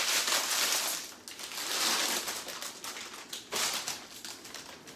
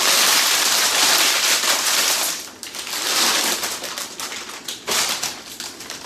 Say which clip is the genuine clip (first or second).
first